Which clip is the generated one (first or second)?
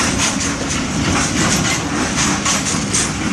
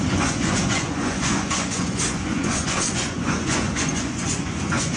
second